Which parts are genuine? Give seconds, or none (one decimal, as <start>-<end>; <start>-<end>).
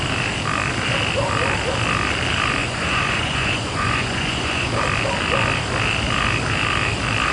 0.0-2.6; 4.7-7.3